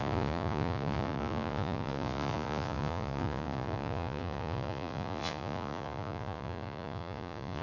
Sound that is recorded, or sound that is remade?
remade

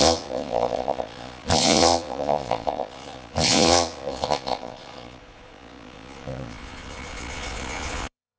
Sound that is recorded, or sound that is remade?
remade